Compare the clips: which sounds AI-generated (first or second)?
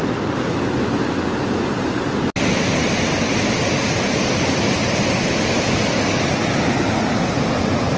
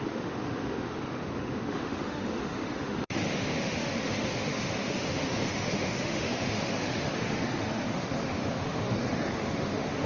second